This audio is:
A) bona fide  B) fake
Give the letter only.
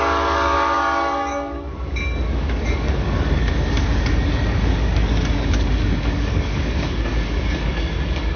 B